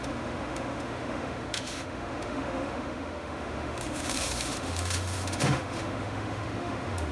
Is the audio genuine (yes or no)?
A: no